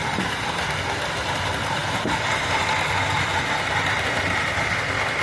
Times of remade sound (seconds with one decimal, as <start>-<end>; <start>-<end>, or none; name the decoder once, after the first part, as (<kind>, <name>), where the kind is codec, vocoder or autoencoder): none